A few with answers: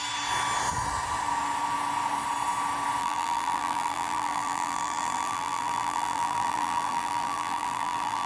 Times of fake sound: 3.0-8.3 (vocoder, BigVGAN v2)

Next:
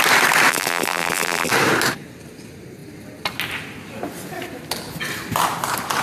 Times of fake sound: 0.5-1.5 (vocoder, BigVGAN v2)